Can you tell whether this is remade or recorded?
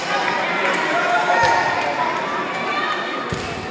recorded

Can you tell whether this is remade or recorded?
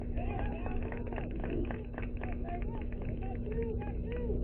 remade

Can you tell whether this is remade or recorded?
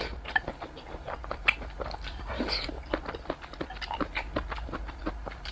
recorded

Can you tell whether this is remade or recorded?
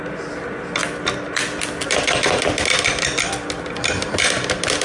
recorded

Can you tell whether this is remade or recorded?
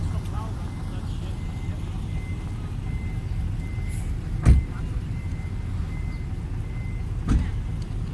recorded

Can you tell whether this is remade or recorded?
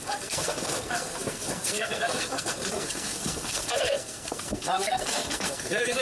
remade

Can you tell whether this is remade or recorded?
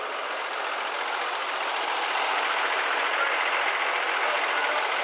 recorded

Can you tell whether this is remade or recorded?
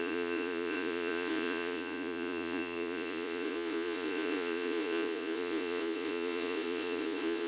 remade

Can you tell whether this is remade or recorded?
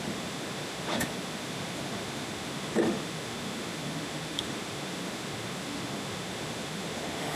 remade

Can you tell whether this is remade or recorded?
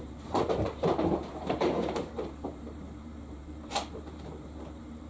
remade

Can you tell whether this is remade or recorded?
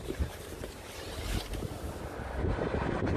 remade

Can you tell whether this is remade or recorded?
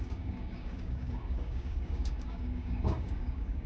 remade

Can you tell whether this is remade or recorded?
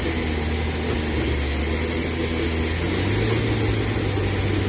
recorded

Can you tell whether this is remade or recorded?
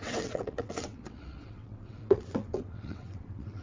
remade